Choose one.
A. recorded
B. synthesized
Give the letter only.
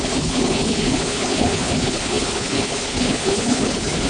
B